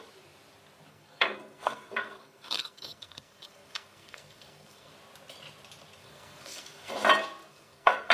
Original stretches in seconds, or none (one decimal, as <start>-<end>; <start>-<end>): 0.0-0.9; 4.9-6.0; 6.9-7.4